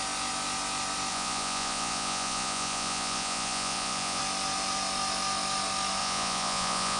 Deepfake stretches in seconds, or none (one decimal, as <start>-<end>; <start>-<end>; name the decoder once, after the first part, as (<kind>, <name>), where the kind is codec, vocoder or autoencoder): 1.1-4.2 (vocoder, Vocos); 6.0-7.0